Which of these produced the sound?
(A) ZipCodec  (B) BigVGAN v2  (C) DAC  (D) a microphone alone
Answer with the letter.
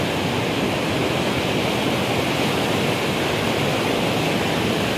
D